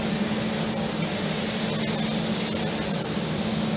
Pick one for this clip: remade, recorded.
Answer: recorded